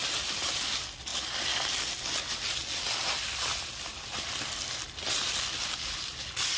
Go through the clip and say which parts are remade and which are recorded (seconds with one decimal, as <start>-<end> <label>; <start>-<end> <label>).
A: 0.0-6.6 recorded

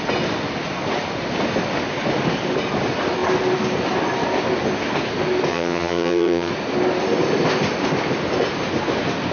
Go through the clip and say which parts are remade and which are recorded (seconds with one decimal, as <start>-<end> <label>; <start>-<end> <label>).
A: 0.0-5.5 recorded; 5.5-6.5 remade; 6.5-9.3 recorded